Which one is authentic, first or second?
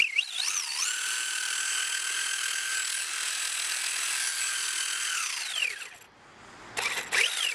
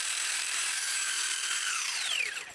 first